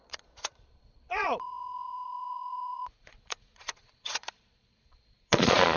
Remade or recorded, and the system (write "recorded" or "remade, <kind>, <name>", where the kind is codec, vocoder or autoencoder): remade, vocoder, Vocos